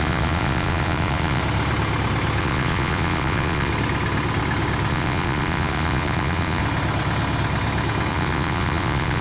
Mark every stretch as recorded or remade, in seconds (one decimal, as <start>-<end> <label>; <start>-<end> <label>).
0.0-1.4 remade; 1.4-2.4 recorded; 2.4-3.7 remade; 3.7-4.9 recorded; 4.9-6.6 remade; 6.6-8.1 recorded; 8.1-9.2 remade